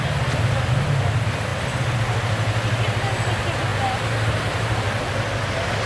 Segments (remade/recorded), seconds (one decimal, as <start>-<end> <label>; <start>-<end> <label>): 0.0-5.9 recorded